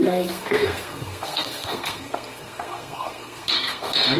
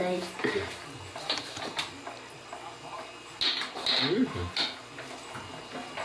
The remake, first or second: first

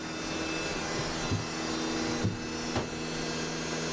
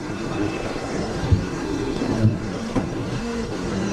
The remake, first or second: second